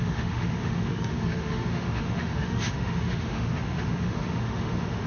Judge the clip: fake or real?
fake